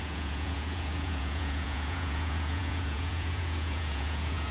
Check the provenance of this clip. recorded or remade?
remade